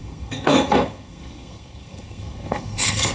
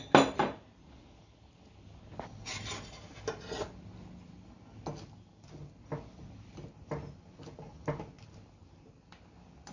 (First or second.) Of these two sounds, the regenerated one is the first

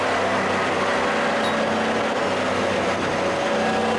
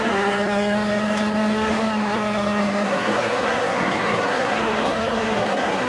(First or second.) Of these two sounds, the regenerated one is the second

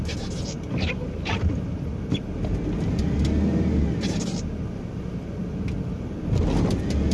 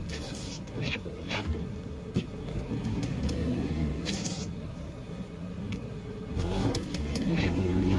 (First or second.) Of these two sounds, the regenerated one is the second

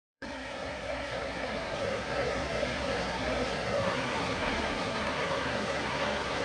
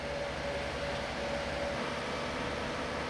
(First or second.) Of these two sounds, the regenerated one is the first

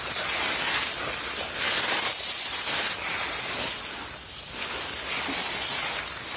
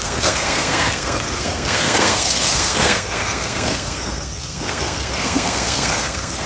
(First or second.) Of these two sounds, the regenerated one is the second